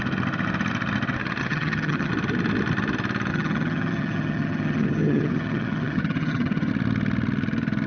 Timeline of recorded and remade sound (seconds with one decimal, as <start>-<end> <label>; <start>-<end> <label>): 0.0-1.4 recorded; 1.4-2.1 remade; 2.1-3.3 recorded; 3.3-6.7 remade; 6.7-7.9 recorded